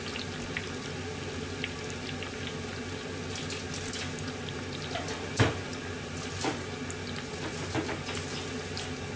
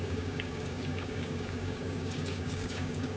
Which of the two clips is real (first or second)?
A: first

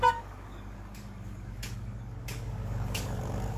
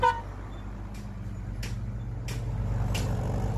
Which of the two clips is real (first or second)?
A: second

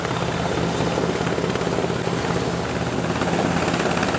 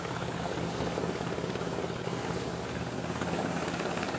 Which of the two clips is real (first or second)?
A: first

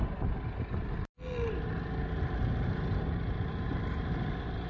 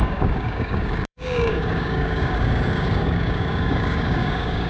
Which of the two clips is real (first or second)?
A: first